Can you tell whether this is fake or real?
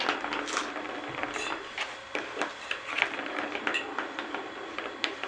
real